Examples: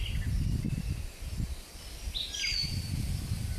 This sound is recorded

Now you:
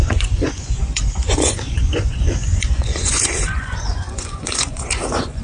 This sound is remade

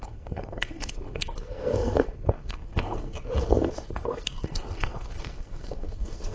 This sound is remade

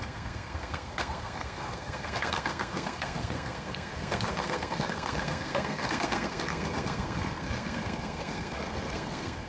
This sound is remade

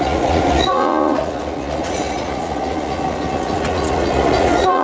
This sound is remade